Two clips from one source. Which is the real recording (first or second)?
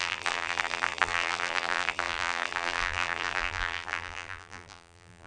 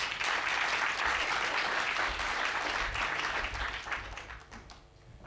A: second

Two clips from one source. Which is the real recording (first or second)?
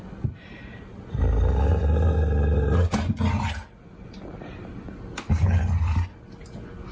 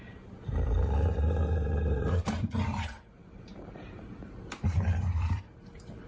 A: first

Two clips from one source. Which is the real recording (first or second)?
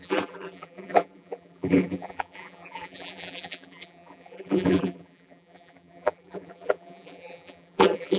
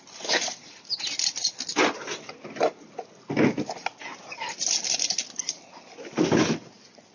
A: second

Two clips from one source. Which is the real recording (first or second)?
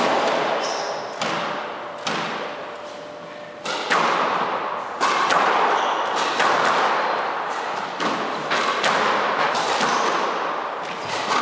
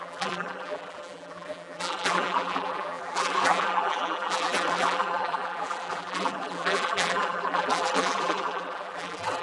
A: first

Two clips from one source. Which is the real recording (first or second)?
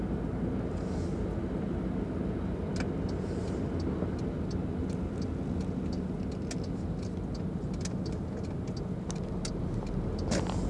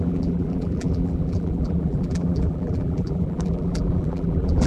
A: first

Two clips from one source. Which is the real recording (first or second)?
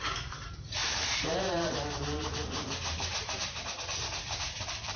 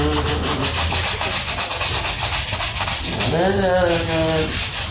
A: second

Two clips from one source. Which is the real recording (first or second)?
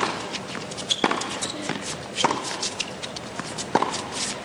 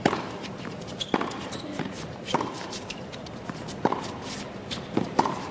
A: first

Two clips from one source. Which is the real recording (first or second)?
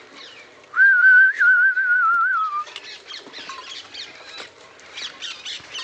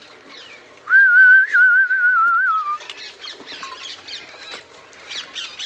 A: second